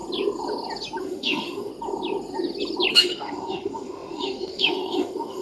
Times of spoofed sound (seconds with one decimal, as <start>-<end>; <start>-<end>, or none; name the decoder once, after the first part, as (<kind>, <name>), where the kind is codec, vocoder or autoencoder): 1.0-1.7 (autoencoder, DAC-VAE); 2.9-5.4